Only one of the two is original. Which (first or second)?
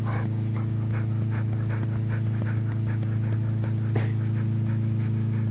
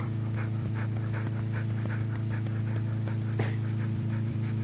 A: first